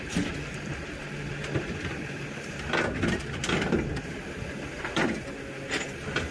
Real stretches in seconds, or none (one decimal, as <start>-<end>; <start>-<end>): 0.0-6.3